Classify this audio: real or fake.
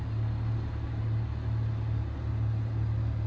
real